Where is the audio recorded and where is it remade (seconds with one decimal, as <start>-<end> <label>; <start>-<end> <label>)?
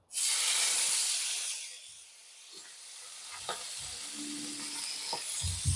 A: 0.0-5.8 recorded